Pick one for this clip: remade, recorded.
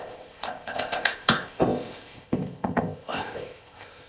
remade